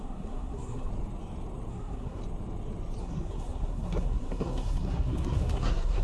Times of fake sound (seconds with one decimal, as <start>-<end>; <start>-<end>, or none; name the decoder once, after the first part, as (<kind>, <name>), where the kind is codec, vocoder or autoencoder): 0.0-0.9 (codec, SNAC); 1.7-2.2; 3.0-6.0